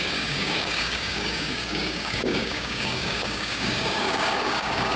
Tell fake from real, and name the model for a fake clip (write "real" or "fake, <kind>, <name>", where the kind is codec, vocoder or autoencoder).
fake, codec, DAC